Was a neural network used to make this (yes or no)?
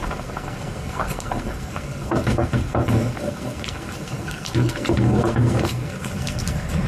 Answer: yes